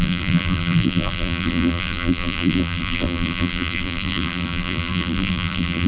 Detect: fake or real fake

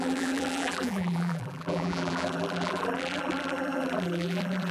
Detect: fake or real fake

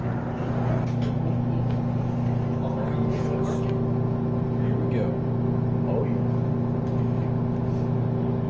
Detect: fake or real real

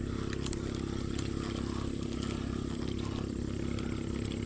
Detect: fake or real real